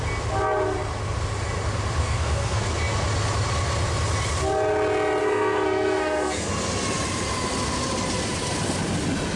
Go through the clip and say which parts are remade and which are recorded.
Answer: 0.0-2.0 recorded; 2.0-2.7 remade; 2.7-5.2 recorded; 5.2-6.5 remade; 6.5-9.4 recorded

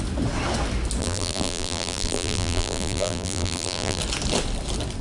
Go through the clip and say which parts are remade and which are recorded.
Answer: 0.0-1.0 recorded; 1.0-4.0 remade; 4.0-5.0 recorded